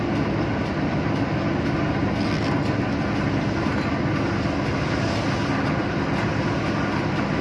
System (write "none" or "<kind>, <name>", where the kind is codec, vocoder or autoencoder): none